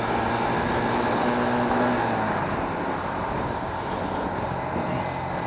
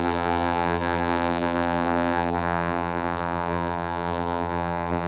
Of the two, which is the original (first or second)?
first